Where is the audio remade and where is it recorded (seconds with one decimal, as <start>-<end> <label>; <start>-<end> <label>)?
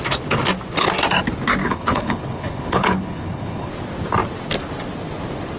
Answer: 0.0-1.6 recorded; 1.6-3.7 remade; 3.7-5.6 recorded